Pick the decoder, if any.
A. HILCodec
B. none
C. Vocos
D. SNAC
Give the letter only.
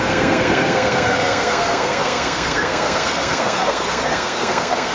D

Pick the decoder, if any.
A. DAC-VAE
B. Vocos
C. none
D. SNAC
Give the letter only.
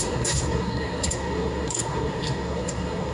D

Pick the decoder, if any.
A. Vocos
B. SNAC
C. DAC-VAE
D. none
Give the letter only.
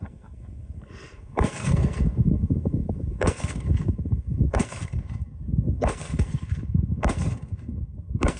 B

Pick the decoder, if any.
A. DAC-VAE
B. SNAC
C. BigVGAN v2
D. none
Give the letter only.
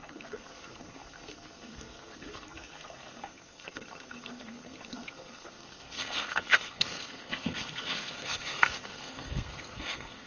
B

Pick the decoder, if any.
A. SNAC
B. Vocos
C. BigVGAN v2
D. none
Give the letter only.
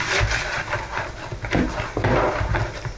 D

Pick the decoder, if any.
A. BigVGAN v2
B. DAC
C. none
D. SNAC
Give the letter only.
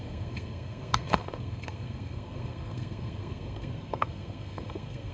D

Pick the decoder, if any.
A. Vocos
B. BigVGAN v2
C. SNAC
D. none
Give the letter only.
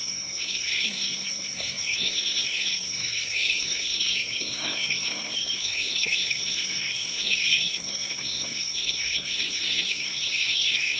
C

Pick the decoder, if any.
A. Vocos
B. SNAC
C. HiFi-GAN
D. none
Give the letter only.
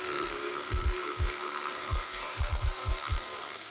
B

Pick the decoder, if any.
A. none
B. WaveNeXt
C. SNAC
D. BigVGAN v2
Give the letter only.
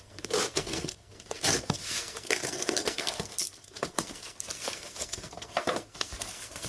C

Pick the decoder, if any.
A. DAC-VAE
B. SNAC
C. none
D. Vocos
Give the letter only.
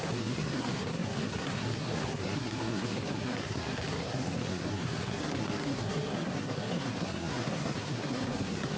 B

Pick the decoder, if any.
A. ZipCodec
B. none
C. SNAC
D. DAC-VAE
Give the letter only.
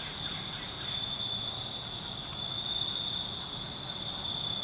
B